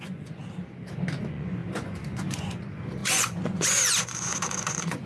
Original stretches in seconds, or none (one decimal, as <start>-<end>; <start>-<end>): 0.4-1.2